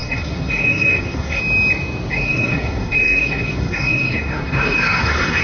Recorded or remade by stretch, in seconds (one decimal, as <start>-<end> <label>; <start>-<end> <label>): 0.0-1.4 remade; 1.4-2.1 recorded; 2.1-5.4 remade